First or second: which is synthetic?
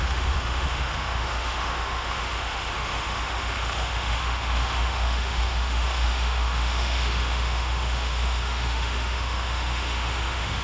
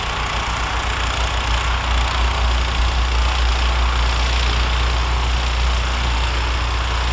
first